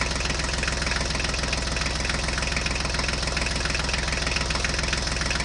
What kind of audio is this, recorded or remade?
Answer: recorded